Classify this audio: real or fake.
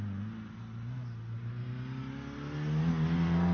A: real